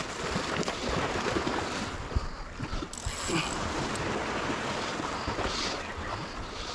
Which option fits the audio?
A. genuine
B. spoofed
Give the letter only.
A